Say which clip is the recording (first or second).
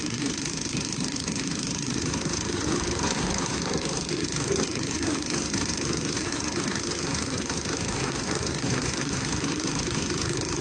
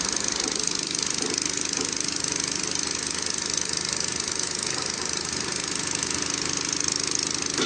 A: second